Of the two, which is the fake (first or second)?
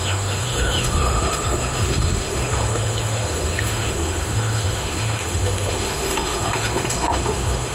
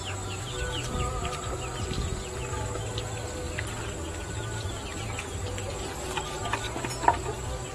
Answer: first